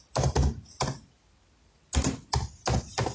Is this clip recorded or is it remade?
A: recorded